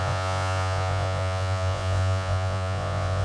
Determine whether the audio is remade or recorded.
remade